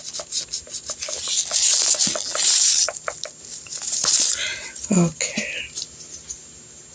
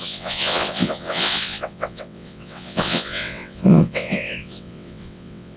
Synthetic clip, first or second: second